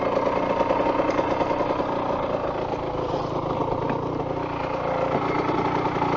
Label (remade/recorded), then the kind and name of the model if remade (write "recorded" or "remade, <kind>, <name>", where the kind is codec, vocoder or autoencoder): recorded